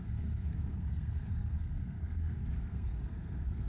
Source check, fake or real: fake